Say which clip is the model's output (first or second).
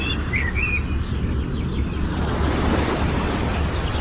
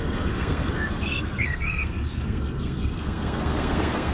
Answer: second